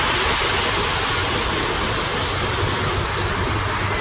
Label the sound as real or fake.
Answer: real